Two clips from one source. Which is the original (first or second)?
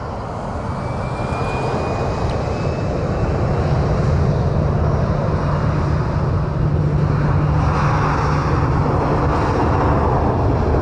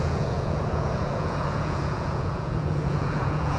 first